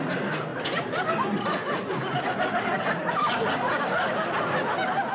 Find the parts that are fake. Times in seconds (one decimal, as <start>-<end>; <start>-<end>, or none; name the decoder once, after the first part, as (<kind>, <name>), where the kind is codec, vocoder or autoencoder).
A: none